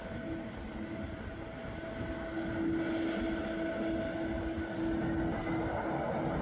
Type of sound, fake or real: real